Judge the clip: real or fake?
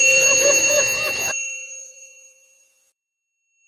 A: fake